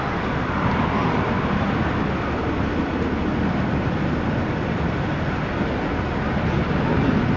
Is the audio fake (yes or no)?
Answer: no